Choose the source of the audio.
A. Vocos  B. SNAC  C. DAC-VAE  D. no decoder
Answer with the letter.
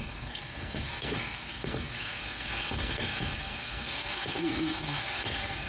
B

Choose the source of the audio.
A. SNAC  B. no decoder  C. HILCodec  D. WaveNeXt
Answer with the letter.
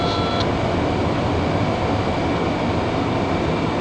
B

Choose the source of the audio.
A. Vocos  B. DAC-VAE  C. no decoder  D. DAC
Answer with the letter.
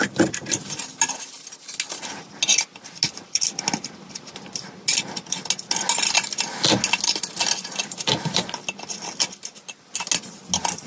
C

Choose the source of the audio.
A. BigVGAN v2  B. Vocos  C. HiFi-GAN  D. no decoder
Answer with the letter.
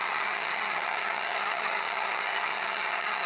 C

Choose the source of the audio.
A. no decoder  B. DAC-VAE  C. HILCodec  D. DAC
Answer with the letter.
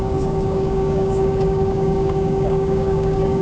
D